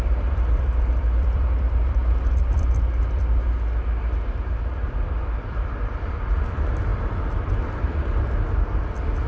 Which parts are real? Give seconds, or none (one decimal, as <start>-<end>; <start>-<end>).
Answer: 2.0-4.7